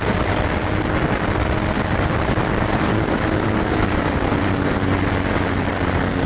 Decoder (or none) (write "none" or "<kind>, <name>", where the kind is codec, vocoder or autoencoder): none